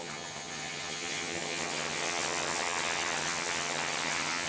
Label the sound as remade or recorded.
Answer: remade